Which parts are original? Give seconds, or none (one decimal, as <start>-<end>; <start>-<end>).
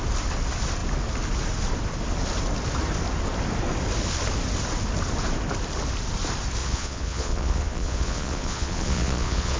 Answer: 0.0-6.6